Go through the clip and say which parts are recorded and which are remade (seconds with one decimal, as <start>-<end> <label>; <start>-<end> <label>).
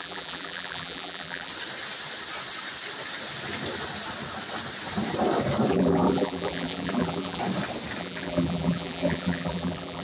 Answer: 0.0-1.5 remade; 1.5-5.7 recorded; 5.7-7.4 remade; 7.4-8.0 recorded; 8.0-10.0 remade